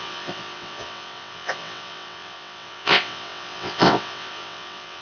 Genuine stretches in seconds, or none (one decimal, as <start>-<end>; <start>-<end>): none